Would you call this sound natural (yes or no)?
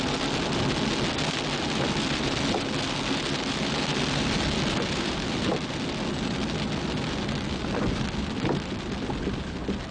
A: yes